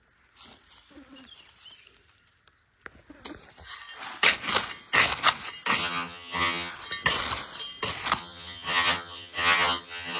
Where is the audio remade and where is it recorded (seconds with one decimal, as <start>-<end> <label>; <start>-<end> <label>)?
0.0-5.8 recorded; 5.8-6.7 remade; 6.7-8.2 recorded; 8.2-10.2 remade